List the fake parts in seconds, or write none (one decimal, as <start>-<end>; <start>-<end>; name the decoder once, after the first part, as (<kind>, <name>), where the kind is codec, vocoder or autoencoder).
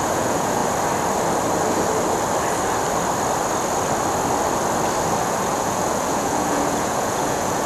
0.0-0.6 (vocoder, Vocos); 5.2-7.7